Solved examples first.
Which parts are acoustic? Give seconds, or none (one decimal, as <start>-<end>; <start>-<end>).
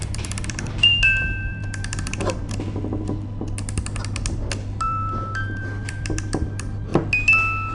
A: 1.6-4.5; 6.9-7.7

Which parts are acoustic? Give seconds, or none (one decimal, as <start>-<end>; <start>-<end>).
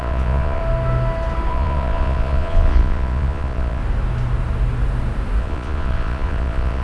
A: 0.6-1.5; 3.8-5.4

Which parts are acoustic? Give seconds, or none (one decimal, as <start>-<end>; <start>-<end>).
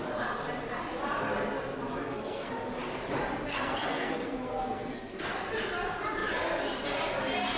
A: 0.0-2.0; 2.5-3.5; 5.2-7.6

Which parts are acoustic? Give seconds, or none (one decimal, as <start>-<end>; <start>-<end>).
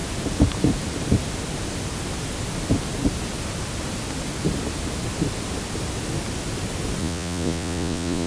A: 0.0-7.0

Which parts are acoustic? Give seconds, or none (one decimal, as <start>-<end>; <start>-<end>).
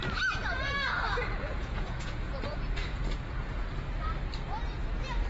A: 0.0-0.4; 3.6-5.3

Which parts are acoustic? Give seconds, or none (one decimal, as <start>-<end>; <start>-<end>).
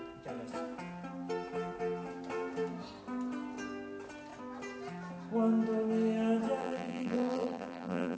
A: 0.0-6.6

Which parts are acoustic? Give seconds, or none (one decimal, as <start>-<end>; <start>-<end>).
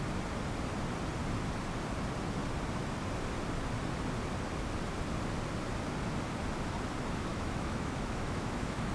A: 0.0-7.3